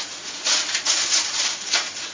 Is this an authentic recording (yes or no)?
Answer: no